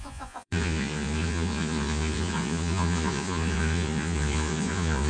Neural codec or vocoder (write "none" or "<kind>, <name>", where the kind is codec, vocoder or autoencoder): vocoder, Vocos